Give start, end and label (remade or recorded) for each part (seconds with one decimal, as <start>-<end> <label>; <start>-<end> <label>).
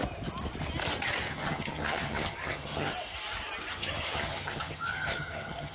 0.0-1.3 recorded; 1.3-2.9 remade; 2.9-3.7 recorded; 3.7-5.7 remade